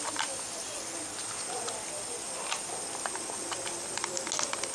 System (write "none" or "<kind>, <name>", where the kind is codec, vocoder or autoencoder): none